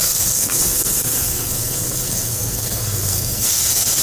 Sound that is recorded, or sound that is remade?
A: remade